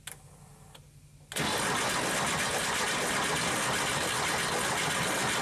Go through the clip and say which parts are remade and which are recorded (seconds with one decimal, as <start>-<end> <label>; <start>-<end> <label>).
0.0-5.4 recorded